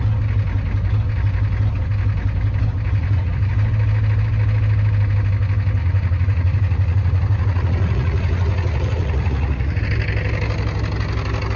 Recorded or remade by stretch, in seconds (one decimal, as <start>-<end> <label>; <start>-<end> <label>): 0.0-3.0 recorded; 3.0-3.5 remade; 3.5-5.8 recorded; 5.8-9.8 remade; 9.8-11.6 recorded